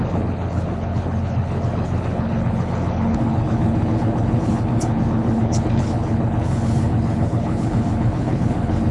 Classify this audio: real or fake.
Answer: fake